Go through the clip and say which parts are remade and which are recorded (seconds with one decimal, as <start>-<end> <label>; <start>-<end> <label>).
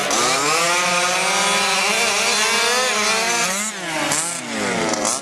0.0-5.2 recorded